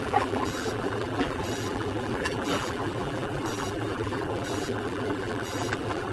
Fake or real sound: fake